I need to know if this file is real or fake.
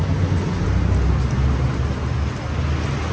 real